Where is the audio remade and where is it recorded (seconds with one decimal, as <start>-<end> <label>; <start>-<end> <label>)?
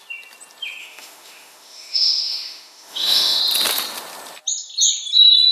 0.0-0.8 recorded; 0.8-3.4 remade; 3.4-5.5 recorded